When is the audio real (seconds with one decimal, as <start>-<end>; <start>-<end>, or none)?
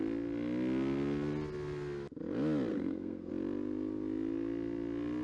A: 0.0-2.7; 3.3-5.2